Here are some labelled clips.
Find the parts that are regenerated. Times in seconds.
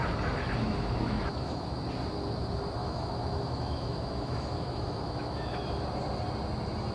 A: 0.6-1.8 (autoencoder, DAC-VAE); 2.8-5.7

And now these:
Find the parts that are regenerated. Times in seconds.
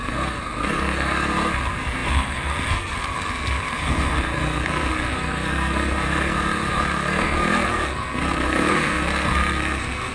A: 0.0-10.1 (codec, SNAC)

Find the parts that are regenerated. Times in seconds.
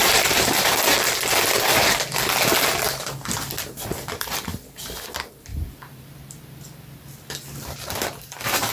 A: 4.5-5.1 (vocoder, BigVGAN v2); 5.5-6.1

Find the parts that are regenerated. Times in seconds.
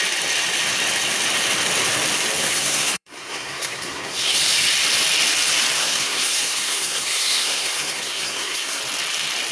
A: 2.4-4.4 (codec, SNAC); 5.8-8.8